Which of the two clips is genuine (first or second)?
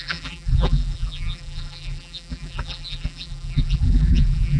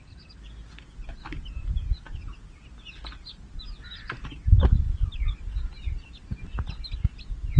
second